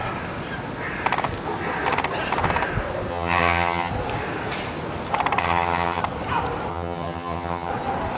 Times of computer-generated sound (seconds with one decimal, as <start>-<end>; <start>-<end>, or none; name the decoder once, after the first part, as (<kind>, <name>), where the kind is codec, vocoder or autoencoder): 3.1-3.9 (vocoder, HiFi-GAN); 5.4-6.0; 6.7-7.7